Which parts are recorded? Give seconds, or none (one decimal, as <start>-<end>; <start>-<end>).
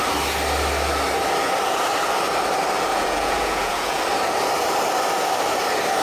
0.0-2.9; 4.0-6.0